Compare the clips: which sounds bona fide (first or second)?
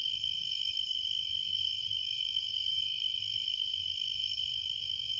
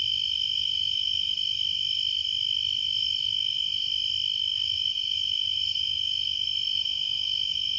second